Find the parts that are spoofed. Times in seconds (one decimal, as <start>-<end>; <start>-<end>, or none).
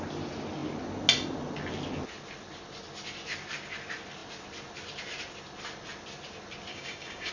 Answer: 6.7-7.3